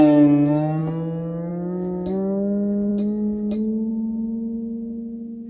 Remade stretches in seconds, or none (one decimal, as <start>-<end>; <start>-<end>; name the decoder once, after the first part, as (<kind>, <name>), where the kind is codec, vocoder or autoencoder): none